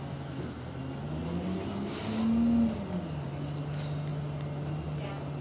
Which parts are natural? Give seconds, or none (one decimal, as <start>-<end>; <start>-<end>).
0.0-5.4